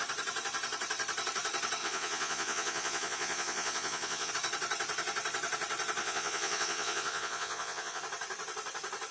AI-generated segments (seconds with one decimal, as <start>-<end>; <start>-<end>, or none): 1.8-4.3; 6.0-8.0